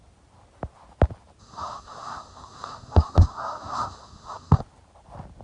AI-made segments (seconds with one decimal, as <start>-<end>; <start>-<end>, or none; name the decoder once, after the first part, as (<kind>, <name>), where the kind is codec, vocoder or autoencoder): 1.4-4.6 (codec, SNAC)